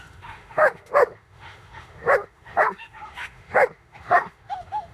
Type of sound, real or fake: fake